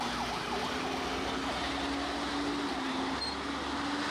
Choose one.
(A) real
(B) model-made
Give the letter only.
A